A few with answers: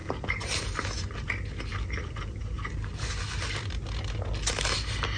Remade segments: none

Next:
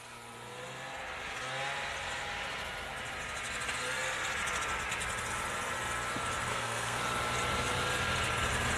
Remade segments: 6.5-7.0 (codec, SNAC)